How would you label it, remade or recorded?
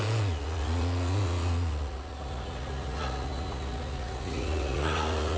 remade